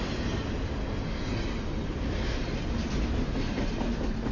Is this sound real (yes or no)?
yes